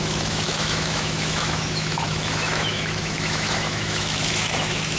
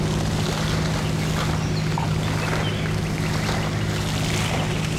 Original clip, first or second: second